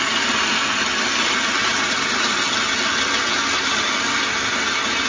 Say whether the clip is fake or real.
real